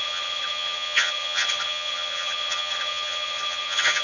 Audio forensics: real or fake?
fake